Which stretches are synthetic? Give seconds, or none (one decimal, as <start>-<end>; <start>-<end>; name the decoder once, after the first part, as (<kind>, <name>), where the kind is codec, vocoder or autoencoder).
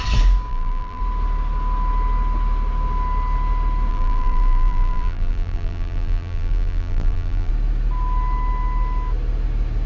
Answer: 0.5-1.0 (vocoder, BigVGAN v2); 3.9-7.5